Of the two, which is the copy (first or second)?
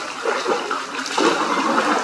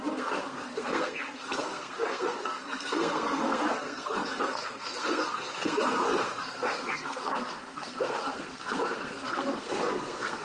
second